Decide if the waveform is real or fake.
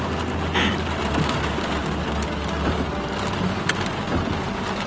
real